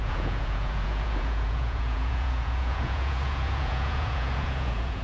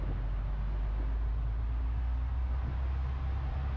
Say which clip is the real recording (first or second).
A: second